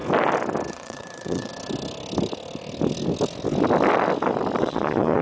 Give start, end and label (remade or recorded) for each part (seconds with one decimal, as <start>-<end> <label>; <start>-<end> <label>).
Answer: 0.0-0.7 recorded; 0.7-1.5 remade; 1.5-4.6 recorded; 4.6-5.2 remade